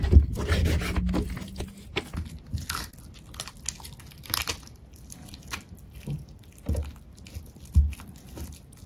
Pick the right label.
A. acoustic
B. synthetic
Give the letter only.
A